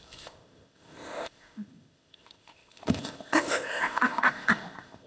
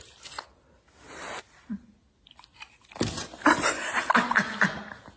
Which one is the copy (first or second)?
first